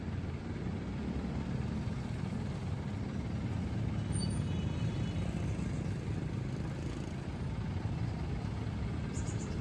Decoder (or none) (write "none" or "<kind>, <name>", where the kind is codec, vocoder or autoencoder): none